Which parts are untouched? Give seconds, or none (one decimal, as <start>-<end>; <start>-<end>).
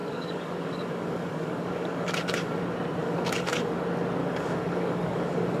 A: 2.6-3.0; 3.8-4.2